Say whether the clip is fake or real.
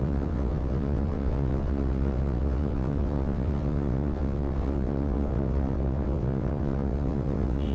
fake